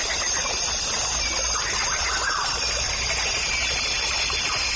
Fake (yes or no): no